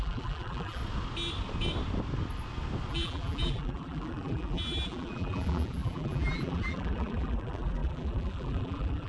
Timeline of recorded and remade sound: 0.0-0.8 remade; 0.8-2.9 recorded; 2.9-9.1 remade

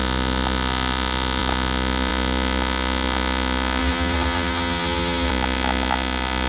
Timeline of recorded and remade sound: 0.0-3.8 recorded; 3.8-5.3 remade; 5.3-6.5 recorded

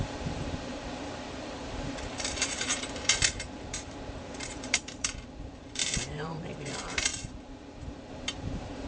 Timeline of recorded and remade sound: 0.0-8.9 remade

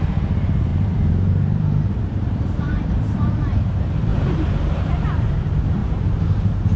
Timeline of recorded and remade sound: 0.0-6.8 remade

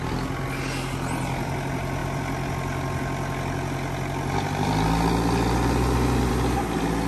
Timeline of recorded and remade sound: 0.0-7.1 recorded

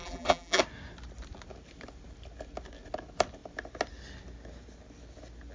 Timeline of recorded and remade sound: 0.0-0.6 remade; 0.6-5.5 recorded

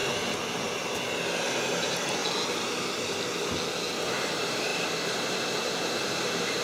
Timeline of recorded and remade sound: 0.0-1.6 recorded; 1.6-2.2 remade; 2.2-4.1 recorded; 4.1-6.6 remade